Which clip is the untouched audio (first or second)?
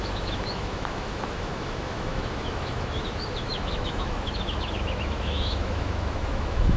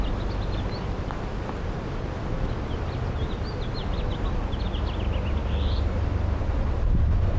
second